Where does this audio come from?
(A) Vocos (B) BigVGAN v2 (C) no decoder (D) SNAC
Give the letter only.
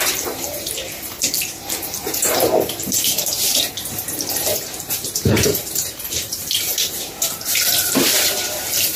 B